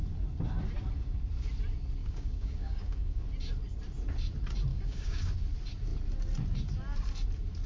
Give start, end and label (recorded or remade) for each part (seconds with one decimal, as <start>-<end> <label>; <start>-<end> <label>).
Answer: 0.0-2.0 recorded; 2.0-3.2 remade; 3.2-4.7 recorded; 4.7-5.3 remade; 5.3-7.7 recorded